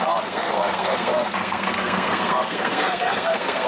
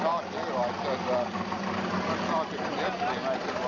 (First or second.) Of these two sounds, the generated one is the first